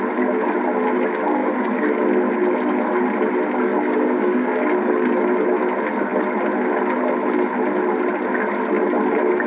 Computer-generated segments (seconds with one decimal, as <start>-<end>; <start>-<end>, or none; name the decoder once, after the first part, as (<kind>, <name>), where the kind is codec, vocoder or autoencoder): 1.4-2.0 (codec, DAC); 3.7-5.1